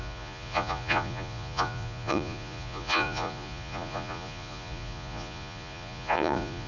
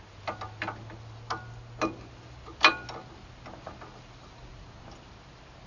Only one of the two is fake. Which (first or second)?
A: first